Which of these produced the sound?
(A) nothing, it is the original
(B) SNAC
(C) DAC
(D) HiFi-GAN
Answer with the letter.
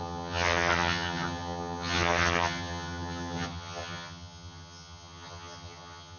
D